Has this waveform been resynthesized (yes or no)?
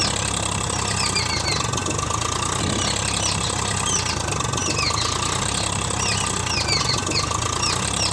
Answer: no